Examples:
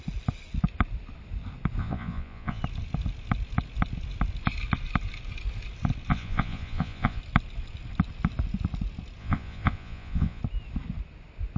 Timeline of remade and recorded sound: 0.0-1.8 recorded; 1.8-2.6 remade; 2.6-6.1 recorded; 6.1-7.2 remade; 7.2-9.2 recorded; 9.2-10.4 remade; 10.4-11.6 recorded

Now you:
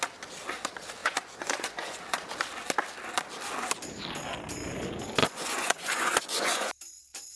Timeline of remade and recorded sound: 0.0-1.0 recorded; 1.0-2.0 remade; 2.0-5.2 recorded; 5.2-6.7 remade; 6.7-7.4 recorded

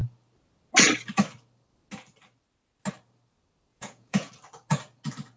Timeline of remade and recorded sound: 0.0-3.7 recorded; 3.7-4.3 remade; 4.3-5.4 recorded

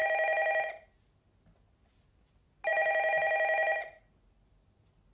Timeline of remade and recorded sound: 0.0-5.1 recorded

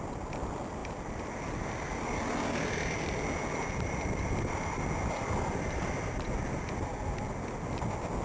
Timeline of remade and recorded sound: 0.0-8.2 recorded